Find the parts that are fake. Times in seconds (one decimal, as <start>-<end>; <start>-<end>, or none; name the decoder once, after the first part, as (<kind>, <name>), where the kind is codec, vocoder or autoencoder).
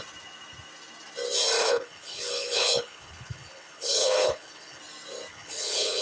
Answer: 1.6-4.8 (codec, HILCodec); 5.3-6.0